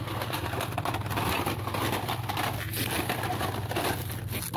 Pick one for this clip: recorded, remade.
recorded